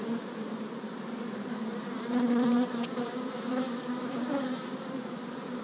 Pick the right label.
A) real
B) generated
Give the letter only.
B